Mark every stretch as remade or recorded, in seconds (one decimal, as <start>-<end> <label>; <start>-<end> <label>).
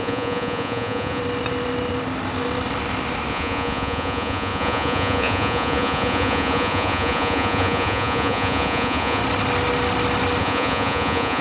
0.0-1.2 remade; 1.2-3.3 recorded; 3.3-9.2 remade; 9.2-10.4 recorded; 10.4-11.4 remade